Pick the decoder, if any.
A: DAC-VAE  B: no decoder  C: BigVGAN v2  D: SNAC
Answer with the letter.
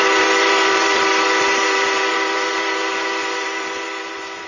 C